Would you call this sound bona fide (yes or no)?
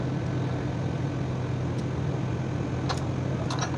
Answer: yes